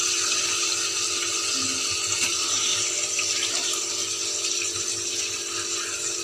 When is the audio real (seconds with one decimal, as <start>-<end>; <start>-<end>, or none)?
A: 0.0-6.2